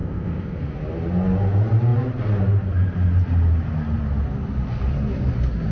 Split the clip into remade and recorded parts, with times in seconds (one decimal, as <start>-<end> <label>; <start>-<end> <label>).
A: 0.0-0.6 remade; 0.6-5.7 recorded